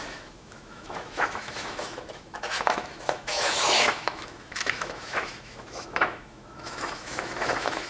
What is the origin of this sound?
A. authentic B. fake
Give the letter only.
B